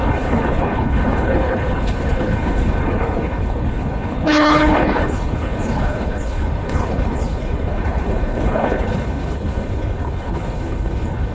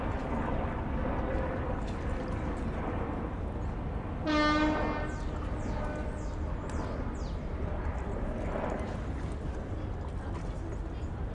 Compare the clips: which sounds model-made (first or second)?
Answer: first